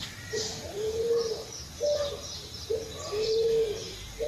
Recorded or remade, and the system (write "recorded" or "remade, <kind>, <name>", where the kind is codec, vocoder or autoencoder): remade, vocoder, BigVGAN v2